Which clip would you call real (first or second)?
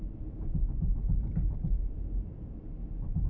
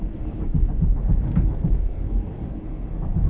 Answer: first